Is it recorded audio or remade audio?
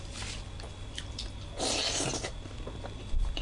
recorded